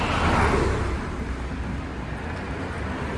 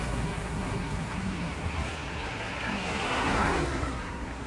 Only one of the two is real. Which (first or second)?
first